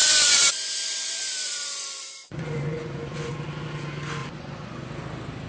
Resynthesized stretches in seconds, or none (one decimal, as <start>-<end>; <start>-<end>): 0.0-3.3; 4.2-4.9